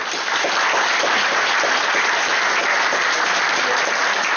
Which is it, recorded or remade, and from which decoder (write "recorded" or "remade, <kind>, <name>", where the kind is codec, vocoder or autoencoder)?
recorded